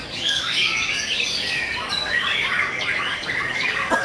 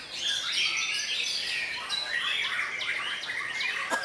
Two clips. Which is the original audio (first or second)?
second